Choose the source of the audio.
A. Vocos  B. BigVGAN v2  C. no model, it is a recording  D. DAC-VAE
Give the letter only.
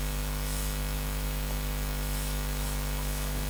D